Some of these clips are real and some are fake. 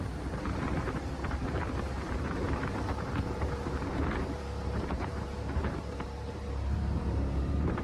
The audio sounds fake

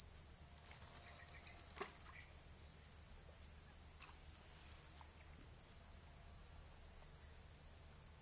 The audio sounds real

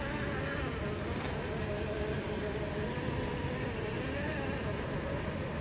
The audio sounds real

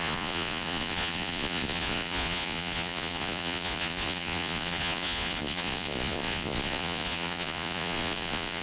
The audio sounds fake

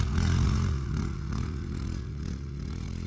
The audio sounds fake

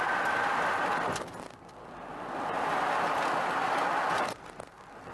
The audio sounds real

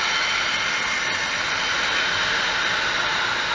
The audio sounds real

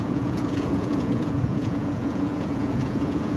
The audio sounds fake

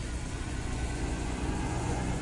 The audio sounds fake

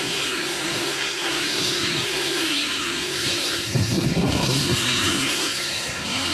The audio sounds fake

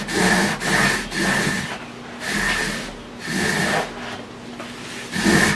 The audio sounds real